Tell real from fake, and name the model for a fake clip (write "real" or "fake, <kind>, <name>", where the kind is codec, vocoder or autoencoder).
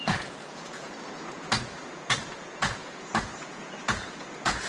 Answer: fake, vocoder, Vocos